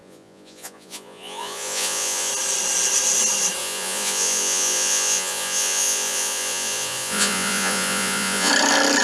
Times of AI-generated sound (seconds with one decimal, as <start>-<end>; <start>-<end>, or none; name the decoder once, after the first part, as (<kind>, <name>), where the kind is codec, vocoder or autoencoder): 0.0-2.3 (vocoder, Vocos); 3.6-8.5